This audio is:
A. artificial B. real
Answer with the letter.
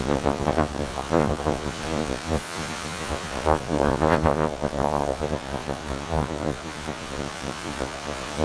A